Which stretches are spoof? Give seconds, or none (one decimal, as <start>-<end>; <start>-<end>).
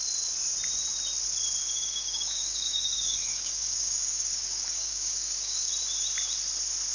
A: 1.6-5.7